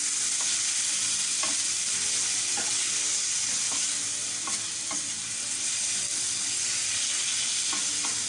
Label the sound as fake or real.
real